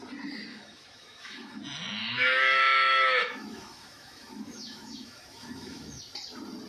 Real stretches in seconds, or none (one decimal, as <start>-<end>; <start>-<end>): 0.0-0.5; 1.6-2.0; 6.0-6.7